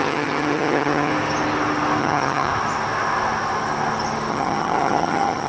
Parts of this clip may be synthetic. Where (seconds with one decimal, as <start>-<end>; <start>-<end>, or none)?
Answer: 0.0-1.1; 2.0-2.5; 4.3-5.5